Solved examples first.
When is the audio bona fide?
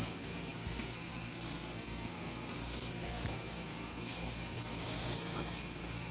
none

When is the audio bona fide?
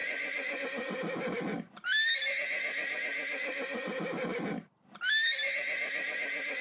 0.6-6.6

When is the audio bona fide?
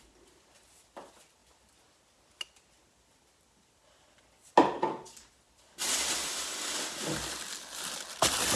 0.0-8.6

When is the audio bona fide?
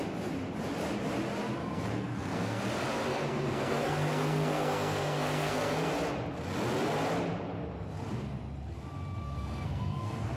0.0-1.6; 2.6-3.1; 5.9-9.2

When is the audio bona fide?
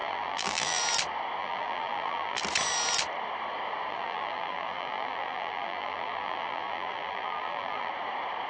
0.8-1.4; 2.4-3.9; 7.9-8.5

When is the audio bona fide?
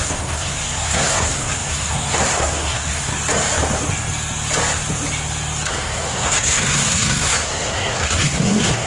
3.1-5.7